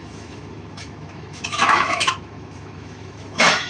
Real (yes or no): no